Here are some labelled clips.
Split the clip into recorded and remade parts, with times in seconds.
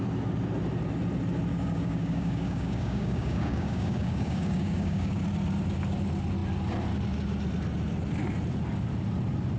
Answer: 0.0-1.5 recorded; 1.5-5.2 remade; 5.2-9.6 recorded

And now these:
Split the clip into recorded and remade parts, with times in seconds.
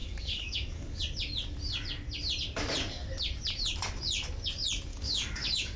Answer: 0.0-1.0 remade; 1.0-4.9 recorded; 4.9-5.8 remade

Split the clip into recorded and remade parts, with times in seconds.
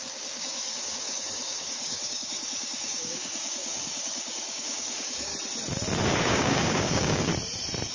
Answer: 0.0-5.3 remade; 5.3-6.2 recorded; 6.2-7.3 remade; 7.3-7.9 recorded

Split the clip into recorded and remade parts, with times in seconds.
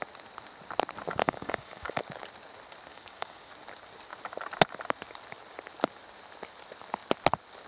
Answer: 0.0-1.2 recorded; 1.2-2.0 remade; 2.0-2.9 recorded; 2.9-3.5 remade; 3.5-7.7 recorded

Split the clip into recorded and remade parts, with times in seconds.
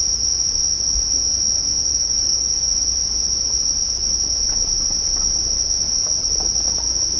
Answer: 0.0-1.9 recorded; 1.9-2.7 remade; 2.7-7.2 recorded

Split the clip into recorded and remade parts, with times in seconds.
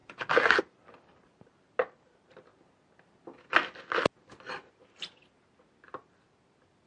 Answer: 0.0-0.6 remade; 0.6-6.9 recorded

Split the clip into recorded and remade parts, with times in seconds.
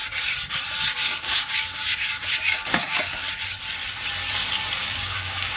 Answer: 0.0-1.0 recorded; 1.0-3.3 remade; 3.3-4.8 recorded; 4.8-5.6 remade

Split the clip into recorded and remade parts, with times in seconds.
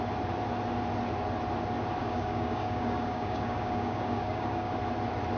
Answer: 0.0-2.0 recorded; 2.0-4.7 remade; 4.7-5.4 recorded